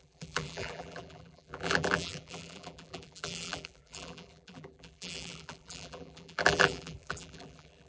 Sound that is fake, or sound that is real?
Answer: fake